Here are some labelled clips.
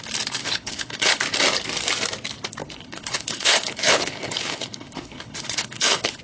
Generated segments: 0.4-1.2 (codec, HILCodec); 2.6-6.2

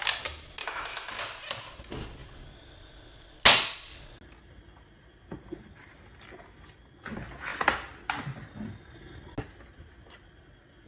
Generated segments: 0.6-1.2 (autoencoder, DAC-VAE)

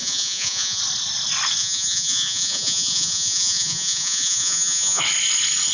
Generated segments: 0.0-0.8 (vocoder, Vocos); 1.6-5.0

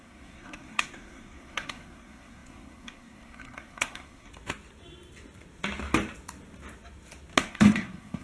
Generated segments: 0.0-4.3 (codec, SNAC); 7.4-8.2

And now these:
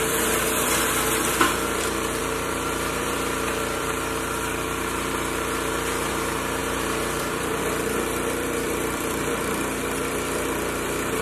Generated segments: 0.0-11.2 (vocoder, BigVGAN v2)

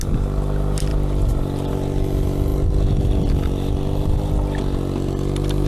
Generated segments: none

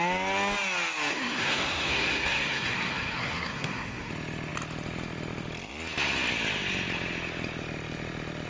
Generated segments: 1.1-4.1 (codec, SNAC)

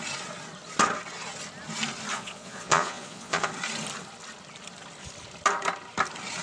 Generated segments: 2.1-3.5 (vocoder, Vocos)